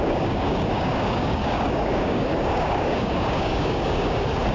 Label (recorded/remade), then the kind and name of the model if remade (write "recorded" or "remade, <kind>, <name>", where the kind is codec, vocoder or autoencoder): remade, codec, DAC